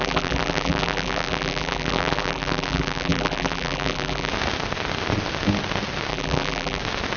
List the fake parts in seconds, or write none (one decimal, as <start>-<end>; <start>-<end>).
0.0-4.3; 6.1-6.8